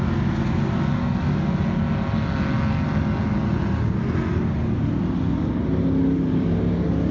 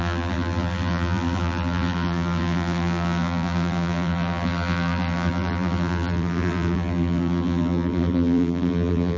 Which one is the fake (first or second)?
second